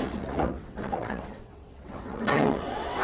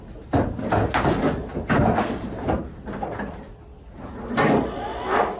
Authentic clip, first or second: second